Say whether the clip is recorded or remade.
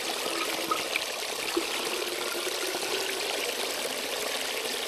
recorded